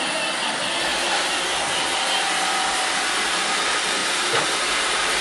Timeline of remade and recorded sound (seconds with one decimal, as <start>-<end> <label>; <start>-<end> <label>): 0.0-4.0 recorded; 4.0-5.2 remade